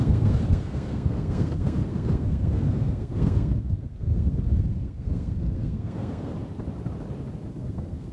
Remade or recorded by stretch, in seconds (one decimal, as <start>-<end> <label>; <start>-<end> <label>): 0.0-6.3 remade; 6.3-7.5 recorded; 7.5-8.1 remade